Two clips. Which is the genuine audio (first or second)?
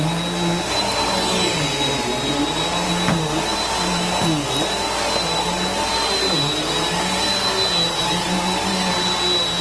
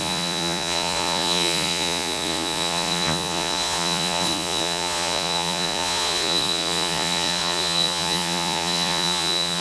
first